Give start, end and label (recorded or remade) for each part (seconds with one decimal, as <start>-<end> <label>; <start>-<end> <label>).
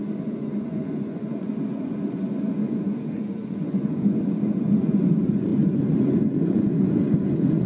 0.0-7.7 remade